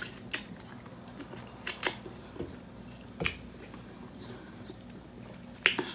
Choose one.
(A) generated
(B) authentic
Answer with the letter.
B